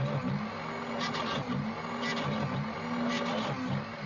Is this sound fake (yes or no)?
no